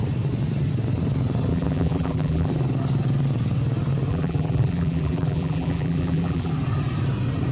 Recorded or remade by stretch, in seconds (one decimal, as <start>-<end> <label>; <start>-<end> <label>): 0.0-1.5 recorded; 1.5-2.5 remade; 2.5-4.1 recorded; 4.1-6.5 remade; 6.5-7.5 recorded